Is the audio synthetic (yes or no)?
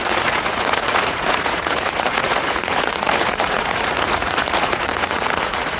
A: yes